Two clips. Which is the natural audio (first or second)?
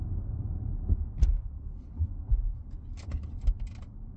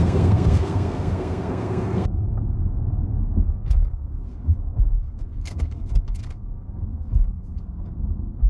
first